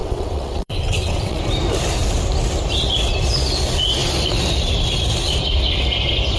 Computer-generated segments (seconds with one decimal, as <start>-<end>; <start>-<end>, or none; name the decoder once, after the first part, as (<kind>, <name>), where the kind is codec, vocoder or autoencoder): 0.0-1.4 (vocoder, WaveNeXt)